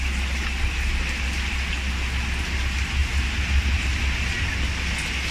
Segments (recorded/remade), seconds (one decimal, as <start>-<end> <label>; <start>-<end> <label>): 0.0-5.3 recorded